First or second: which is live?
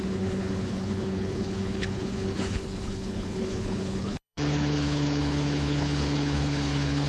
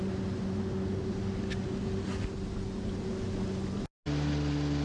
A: second